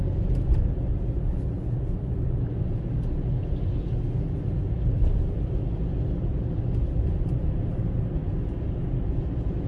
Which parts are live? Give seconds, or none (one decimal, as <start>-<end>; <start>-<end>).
0.0-9.7